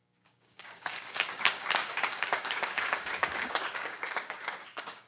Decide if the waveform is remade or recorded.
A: remade